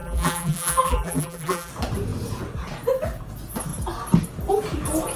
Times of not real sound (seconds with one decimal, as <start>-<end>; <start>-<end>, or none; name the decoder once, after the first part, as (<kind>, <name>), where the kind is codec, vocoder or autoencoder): 0.0-1.7 (vocoder, BigVGAN v2)